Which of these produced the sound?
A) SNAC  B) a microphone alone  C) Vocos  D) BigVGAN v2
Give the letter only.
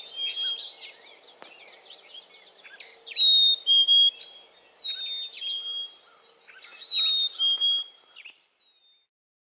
B